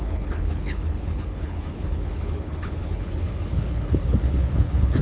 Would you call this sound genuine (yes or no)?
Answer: no